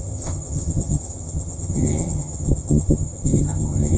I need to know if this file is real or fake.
fake